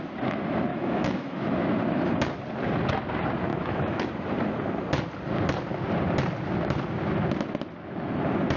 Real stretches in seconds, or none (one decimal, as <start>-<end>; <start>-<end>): 0.0-0.7; 1.5-3.5; 4.1-8.6